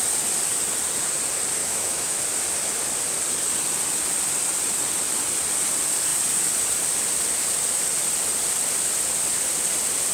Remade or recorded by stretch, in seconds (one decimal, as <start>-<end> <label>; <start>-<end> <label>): 0.0-1.6 recorded; 1.6-2.2 remade; 2.2-10.1 recorded